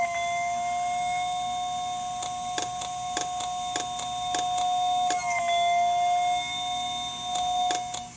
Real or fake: real